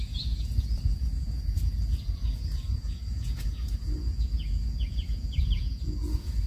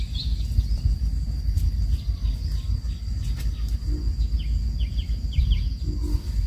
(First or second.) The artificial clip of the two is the first